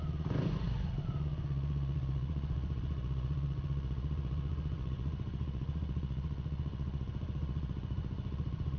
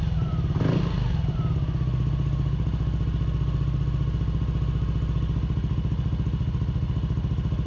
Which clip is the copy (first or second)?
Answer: first